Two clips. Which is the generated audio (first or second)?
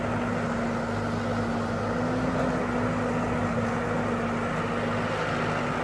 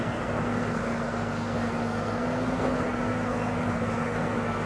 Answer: second